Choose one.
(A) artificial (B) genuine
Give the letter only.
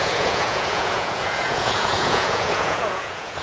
A